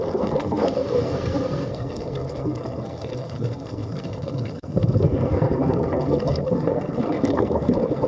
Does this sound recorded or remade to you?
remade